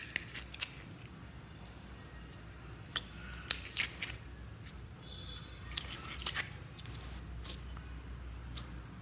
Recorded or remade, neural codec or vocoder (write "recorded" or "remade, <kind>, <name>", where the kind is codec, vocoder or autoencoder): recorded